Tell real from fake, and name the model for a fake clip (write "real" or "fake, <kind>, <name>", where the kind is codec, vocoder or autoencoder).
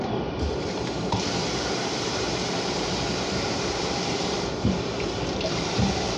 fake, vocoder, BigVGAN v2